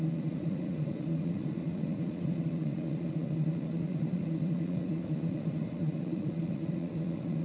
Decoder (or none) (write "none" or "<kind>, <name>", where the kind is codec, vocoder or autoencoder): vocoder, Vocos